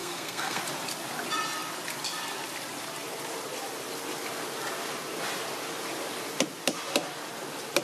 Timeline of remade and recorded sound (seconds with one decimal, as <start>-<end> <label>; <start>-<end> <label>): 0.0-0.6 remade; 0.6-7.8 recorded

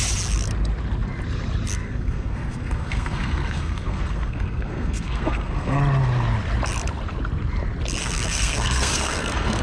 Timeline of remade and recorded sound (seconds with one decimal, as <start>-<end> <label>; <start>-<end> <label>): 0.0-1.8 recorded; 1.8-5.8 remade; 5.8-8.0 recorded; 8.0-9.6 remade

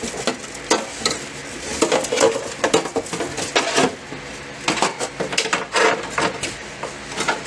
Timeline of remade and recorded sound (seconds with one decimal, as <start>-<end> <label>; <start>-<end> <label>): 0.0-7.5 recorded

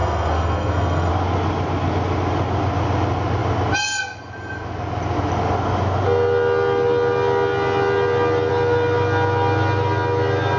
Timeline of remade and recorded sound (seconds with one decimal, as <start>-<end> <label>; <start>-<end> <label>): 0.0-1.1 remade; 1.1-10.6 recorded

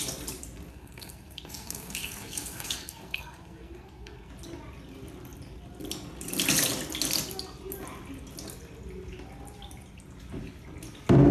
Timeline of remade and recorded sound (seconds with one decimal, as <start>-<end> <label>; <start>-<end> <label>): 0.0-0.7 recorded; 0.7-4.3 remade; 4.3-11.3 recorded

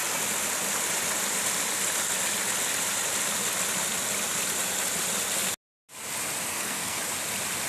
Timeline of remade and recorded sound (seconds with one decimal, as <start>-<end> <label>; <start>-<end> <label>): 0.0-6.5 recorded; 6.5-7.0 remade; 7.0-7.7 recorded

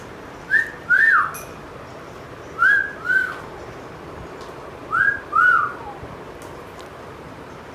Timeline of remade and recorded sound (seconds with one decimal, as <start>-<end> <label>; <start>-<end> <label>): 0.0-7.7 recorded

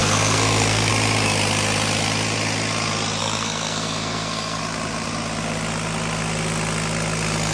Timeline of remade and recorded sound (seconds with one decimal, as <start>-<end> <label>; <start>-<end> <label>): 0.0-0.9 remade; 0.9-3.2 recorded; 3.2-4.6 remade; 4.6-7.5 recorded